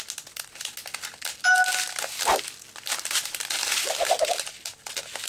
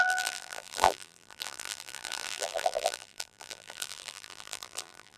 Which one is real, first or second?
first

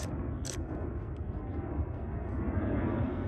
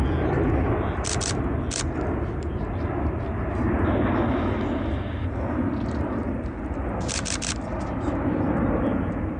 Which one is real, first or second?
second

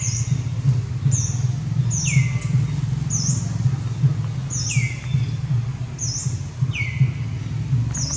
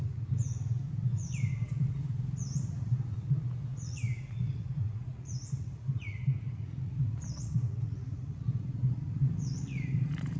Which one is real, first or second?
first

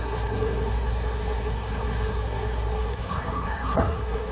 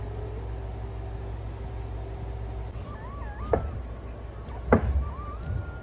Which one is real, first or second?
second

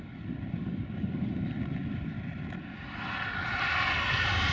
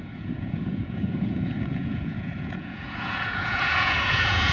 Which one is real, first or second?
first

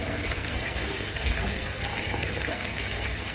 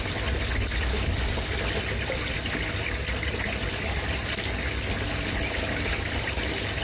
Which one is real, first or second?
second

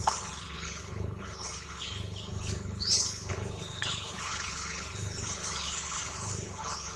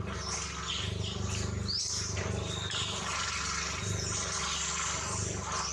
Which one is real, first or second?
second